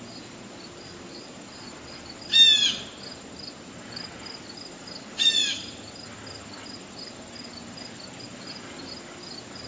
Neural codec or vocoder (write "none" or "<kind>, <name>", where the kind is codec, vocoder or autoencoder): none